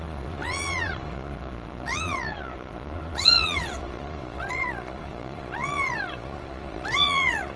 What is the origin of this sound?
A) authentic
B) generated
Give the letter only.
B